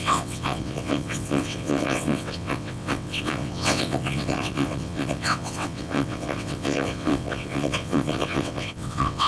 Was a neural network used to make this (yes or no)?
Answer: yes